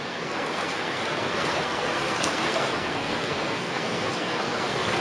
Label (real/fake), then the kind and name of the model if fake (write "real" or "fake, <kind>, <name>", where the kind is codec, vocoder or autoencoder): fake, codec, SNAC